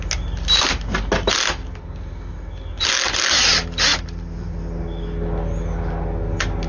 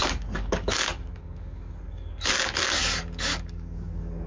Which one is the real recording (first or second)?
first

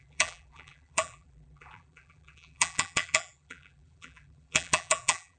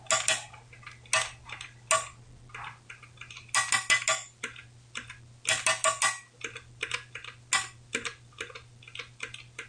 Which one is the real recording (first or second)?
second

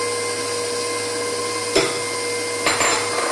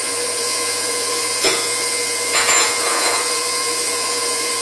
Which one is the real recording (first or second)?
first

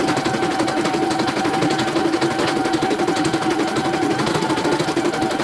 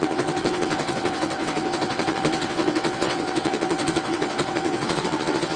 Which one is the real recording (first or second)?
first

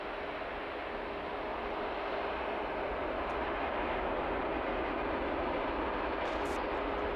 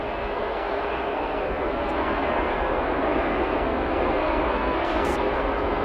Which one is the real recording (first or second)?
first